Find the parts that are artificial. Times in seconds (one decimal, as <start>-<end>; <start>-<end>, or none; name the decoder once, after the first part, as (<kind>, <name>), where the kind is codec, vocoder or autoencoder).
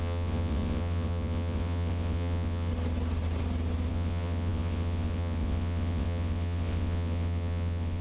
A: 0.0-2.7 (vocoder, WaveNeXt); 3.9-8.0